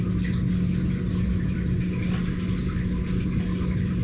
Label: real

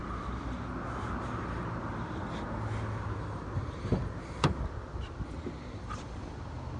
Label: real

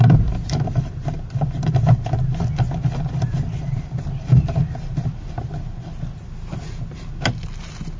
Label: real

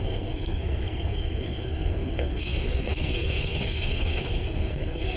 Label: fake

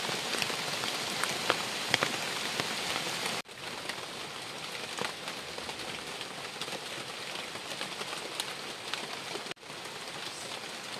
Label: real